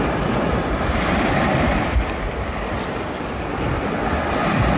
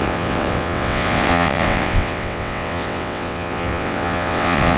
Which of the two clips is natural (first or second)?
first